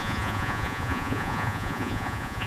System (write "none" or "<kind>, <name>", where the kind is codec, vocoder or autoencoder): vocoder, Vocos